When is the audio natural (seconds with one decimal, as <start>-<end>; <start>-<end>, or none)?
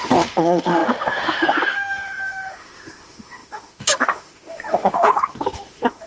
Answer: none